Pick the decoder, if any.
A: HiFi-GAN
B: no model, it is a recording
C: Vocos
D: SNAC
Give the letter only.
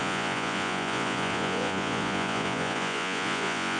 C